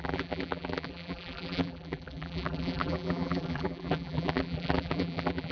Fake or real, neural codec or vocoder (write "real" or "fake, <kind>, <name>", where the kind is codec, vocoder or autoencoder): fake, vocoder, BigVGAN v2